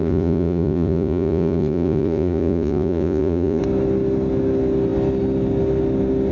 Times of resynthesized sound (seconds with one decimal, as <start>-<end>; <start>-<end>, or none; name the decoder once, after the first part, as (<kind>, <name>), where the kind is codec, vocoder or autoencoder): 0.0-3.6 (vocoder, Vocos)

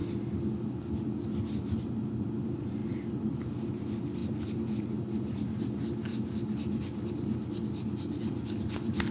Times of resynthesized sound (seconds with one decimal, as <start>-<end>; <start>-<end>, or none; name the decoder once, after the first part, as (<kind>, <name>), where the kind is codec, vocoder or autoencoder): none

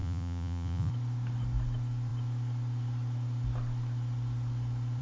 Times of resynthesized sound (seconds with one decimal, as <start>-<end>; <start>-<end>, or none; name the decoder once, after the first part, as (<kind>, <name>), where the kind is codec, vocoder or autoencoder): 0.0-0.9 (vocoder, Vocos)

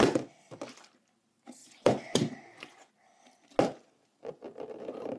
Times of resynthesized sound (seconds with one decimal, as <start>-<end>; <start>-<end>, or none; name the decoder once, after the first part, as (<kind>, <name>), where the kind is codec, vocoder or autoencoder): 1.6-2.9 (vocoder, Vocos)

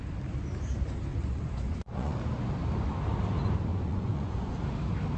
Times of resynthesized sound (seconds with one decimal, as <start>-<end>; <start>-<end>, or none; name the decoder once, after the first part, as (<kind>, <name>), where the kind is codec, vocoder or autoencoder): 1.1-2.2 (vocoder, Vocos); 3.7-4.5

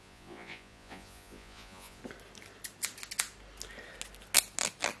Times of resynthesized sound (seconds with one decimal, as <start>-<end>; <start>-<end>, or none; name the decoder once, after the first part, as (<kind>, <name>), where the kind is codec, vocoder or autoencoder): 0.0-2.0 (vocoder, Vocos)

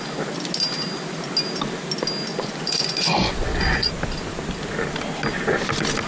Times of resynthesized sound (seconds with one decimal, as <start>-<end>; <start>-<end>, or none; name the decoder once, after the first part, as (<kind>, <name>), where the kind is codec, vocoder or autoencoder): 2.3-3.9 (vocoder, Vocos)